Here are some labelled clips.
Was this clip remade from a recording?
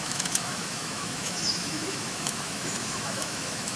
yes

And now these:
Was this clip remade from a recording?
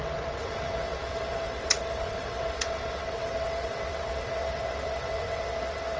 yes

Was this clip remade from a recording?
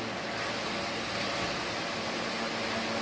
no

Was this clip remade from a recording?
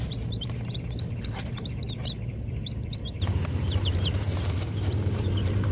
yes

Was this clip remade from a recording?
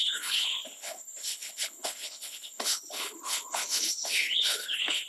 yes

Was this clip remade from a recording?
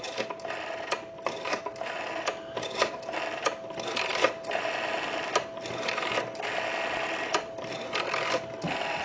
no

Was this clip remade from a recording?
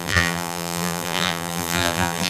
yes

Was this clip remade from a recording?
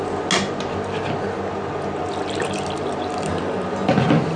no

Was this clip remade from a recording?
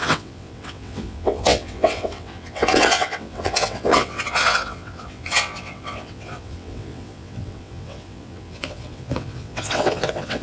yes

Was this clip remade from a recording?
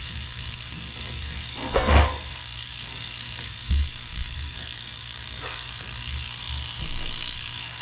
yes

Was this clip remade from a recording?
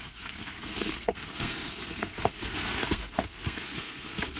yes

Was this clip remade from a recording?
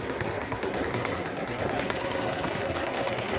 yes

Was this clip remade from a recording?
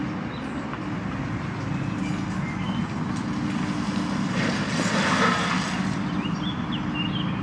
no